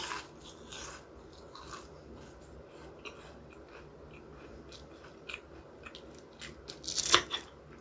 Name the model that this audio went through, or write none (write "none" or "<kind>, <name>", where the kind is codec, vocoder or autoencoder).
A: none